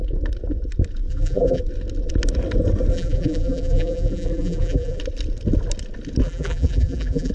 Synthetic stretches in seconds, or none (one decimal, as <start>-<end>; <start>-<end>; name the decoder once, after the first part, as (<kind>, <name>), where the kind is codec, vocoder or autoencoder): 1.1-1.6 (vocoder, BigVGAN v2); 2.9-5.0; 6.2-7.3